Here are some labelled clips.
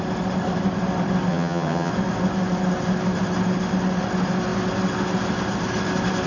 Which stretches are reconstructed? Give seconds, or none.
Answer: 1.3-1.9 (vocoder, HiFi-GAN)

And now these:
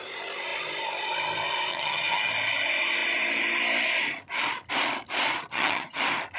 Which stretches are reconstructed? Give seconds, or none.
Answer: 1.7-2.3 (vocoder, HiFi-GAN); 5.5-6.0

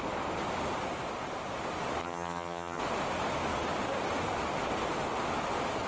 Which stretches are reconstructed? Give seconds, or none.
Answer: 2.0-2.8 (vocoder, HiFi-GAN)

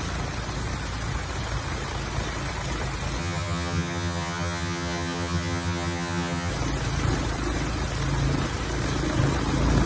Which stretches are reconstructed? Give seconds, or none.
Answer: 3.2-6.5 (vocoder, HiFi-GAN)

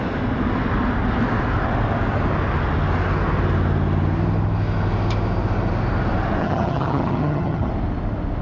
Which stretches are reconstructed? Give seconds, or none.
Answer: 6.4-7.7 (vocoder, HiFi-GAN)

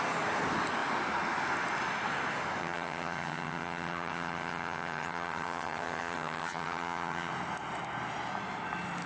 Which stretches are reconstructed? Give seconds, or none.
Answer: 2.6-7.3 (vocoder, HiFi-GAN)